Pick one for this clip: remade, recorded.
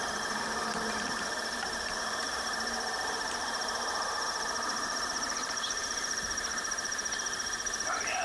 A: remade